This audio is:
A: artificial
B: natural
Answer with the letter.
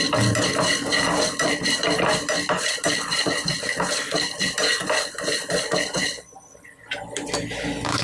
A